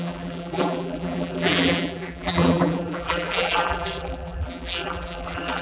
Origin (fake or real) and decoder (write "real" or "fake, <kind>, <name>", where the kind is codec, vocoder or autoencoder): fake, vocoder, BigVGAN v2